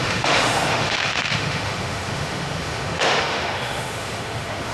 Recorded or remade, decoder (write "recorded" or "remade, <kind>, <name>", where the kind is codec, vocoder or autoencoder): remade, autoencoder, DAC-VAE